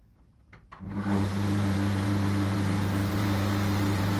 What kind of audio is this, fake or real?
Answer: fake